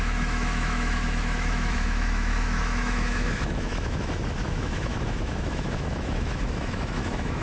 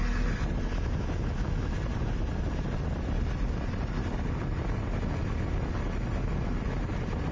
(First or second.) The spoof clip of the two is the first